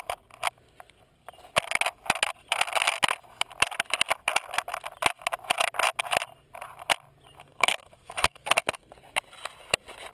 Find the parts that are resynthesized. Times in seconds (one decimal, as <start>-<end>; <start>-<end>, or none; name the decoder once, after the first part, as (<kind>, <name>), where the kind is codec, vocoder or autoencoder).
7.4-9.0 (codec, SNAC)